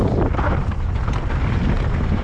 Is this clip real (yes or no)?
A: yes